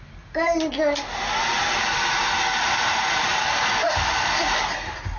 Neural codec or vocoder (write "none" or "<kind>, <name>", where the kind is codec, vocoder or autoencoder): none